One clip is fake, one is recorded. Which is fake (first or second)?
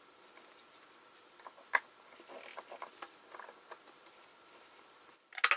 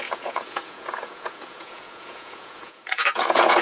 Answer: second